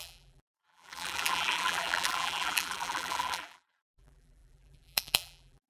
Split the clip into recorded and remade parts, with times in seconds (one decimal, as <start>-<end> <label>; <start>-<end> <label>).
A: 0.0-5.7 remade